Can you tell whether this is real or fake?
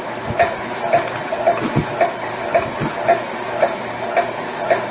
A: real